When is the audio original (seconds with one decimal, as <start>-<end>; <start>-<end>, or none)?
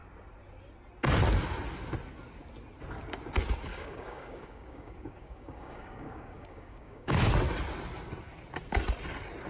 0.0-3.7; 7.3-9.5